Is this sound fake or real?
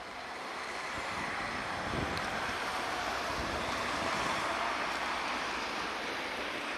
fake